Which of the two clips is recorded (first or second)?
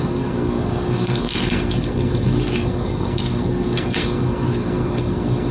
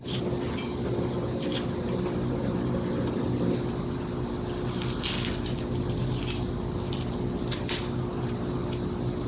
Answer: second